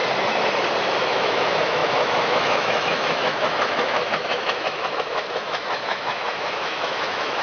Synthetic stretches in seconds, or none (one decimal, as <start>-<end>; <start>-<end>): 1.0-7.4